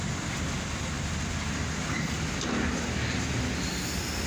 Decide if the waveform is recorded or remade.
recorded